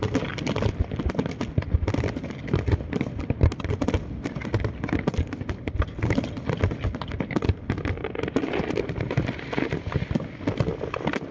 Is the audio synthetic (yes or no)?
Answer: no